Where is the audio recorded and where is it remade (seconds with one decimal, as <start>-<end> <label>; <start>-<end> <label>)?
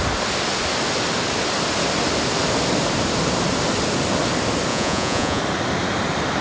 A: 0.0-4.7 recorded; 4.7-5.4 remade; 5.4-6.4 recorded